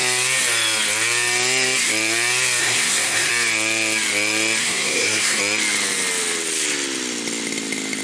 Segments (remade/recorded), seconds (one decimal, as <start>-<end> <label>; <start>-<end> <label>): 0.0-2.6 recorded; 2.6-3.3 remade; 3.3-4.6 recorded; 4.6-5.4 remade; 5.4-8.0 recorded